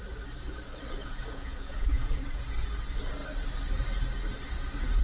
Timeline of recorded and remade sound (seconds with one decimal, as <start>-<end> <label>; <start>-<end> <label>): 0.0-1.0 recorded; 1.0-2.4 remade; 2.4-5.0 recorded

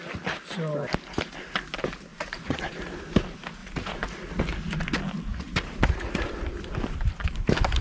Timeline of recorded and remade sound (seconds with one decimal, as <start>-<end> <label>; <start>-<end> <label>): 0.0-2.1 recorded; 2.1-2.9 remade; 2.9-3.6 recorded; 3.6-4.4 remade; 4.4-5.3 recorded; 5.3-6.3 remade; 6.3-7.8 recorded

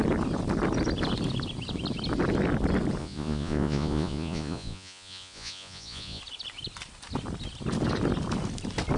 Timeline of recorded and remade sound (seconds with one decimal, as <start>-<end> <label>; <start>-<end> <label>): 0.0-3.0 recorded; 3.0-6.2 remade; 6.2-9.0 recorded

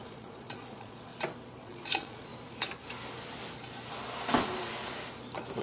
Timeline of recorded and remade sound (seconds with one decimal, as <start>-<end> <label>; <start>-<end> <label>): 0.0-1.1 remade; 1.1-1.6 recorded; 1.6-2.3 remade; 2.3-5.6 recorded

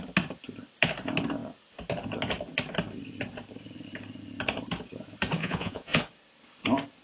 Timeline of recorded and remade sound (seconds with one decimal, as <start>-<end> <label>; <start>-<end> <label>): 0.0-5.4 recorded; 5.4-6.0 remade; 6.0-7.0 recorded